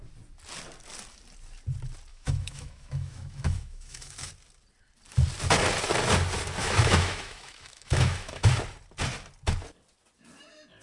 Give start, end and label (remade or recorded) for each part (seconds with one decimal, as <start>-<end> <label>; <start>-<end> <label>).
0.0-2.1 recorded; 2.1-4.3 remade; 4.3-6.6 recorded; 6.6-8.5 remade; 8.5-10.8 recorded